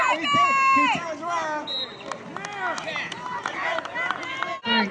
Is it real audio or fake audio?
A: real